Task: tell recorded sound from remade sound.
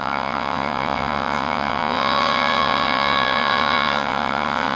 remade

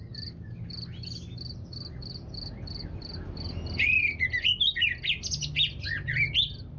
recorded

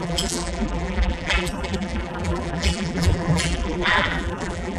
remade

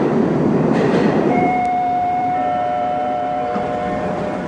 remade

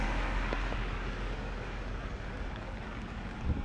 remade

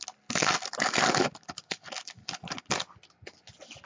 recorded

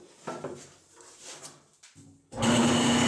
recorded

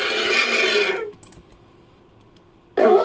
recorded